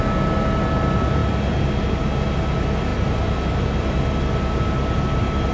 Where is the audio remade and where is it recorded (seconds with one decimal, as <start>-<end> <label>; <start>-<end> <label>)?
0.0-5.5 recorded